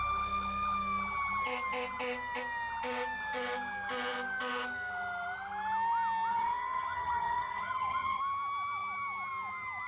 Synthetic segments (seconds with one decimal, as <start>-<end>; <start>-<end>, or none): 6.3-8.2